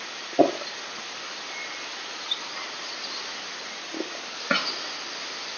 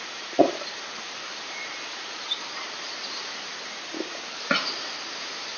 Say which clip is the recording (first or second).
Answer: first